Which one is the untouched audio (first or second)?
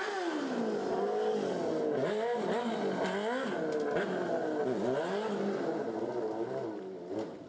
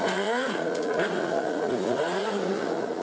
first